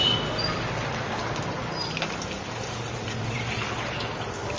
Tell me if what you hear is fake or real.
real